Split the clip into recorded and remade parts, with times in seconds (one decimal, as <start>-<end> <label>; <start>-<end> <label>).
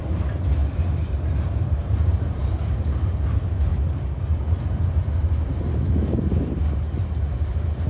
0.0-0.6 recorded; 0.6-3.2 remade; 3.2-5.2 recorded; 5.2-6.6 remade; 6.6-7.9 recorded